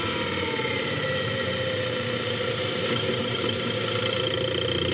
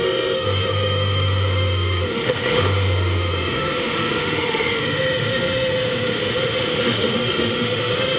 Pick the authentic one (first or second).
first